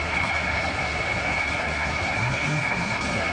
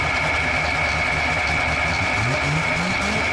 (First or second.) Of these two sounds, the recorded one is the second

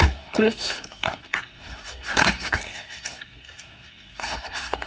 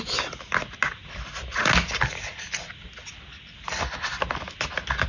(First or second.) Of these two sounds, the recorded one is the second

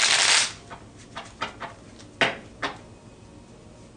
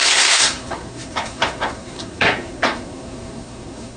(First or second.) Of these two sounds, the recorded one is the first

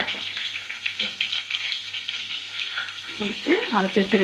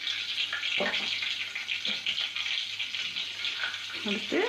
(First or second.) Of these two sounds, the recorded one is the second